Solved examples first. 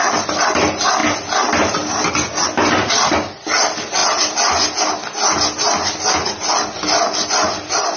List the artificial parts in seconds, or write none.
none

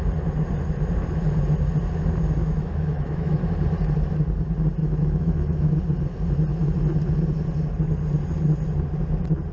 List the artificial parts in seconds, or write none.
2.4-3.5 (autoencoder, DAC-VAE); 4.8-5.8

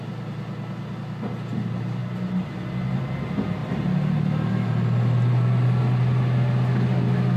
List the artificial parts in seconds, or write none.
none

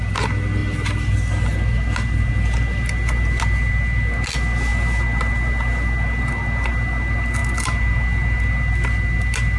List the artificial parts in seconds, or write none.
none

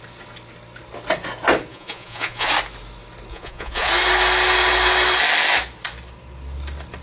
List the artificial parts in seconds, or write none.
1.7-2.5 (vocoder, Vocos); 3.3-3.9

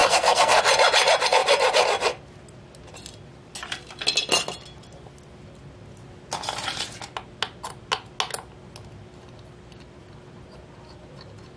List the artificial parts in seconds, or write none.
0.0-0.6 (codec, SNAC)

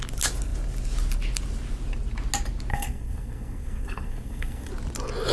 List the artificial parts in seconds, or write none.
2.7-4.7 (codec, SNAC)

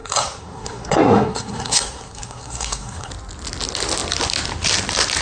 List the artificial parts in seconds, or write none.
0.0-3.1 (codec, SNAC)